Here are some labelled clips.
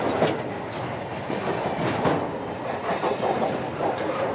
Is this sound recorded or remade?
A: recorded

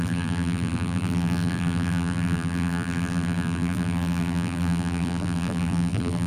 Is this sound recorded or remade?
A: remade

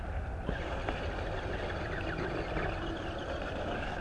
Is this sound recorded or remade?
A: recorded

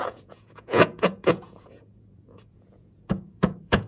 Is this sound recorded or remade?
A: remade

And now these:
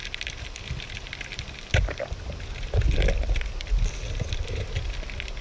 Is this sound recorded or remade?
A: recorded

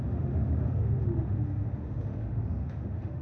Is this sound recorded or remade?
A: remade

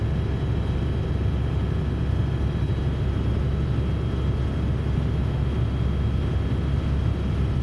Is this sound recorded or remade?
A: recorded